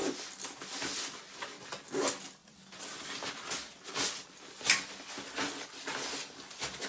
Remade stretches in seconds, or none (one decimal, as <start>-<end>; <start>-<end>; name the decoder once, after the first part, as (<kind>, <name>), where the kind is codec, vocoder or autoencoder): none